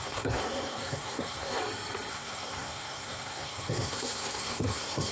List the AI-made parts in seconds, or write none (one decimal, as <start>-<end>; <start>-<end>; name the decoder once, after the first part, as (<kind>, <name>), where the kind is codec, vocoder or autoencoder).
0.0-1.6 (codec, SNAC); 2.1-5.1